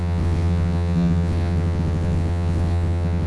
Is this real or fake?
fake